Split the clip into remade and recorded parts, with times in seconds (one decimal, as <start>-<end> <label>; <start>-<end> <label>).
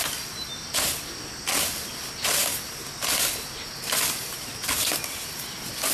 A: 0.0-5.9 recorded